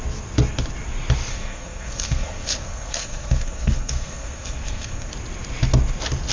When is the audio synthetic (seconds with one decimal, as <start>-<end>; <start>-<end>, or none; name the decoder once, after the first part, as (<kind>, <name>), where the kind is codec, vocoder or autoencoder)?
1.3-5.1 (codec, SNAC)